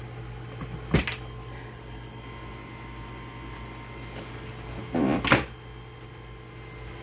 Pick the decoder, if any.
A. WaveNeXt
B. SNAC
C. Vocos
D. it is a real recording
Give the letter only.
D